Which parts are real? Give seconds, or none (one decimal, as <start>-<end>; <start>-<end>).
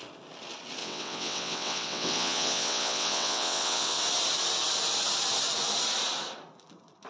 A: 0.0-0.8; 4.0-7.1